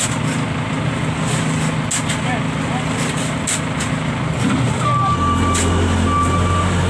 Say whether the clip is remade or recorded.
recorded